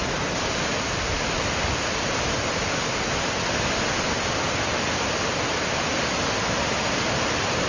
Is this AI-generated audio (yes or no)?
no